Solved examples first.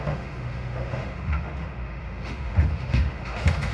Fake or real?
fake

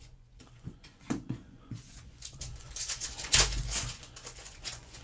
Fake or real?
fake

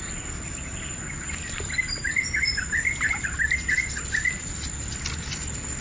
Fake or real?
real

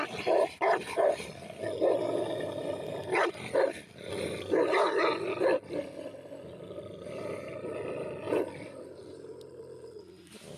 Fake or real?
real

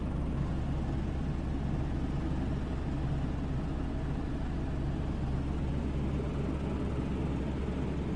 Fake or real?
real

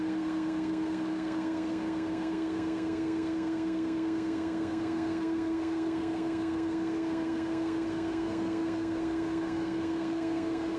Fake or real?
fake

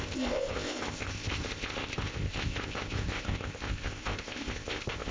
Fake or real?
fake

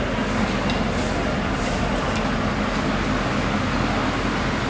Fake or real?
real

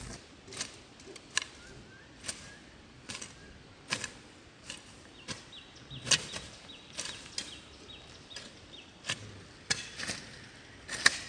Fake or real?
real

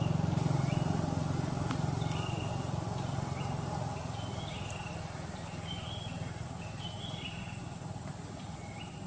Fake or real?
real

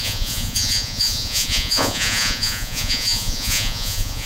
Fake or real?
fake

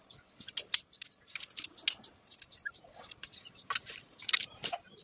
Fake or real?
real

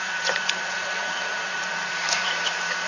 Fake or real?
fake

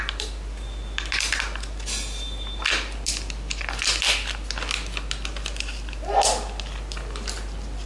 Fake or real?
real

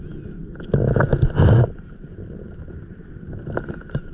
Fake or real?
real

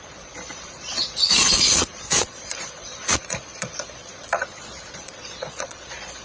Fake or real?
fake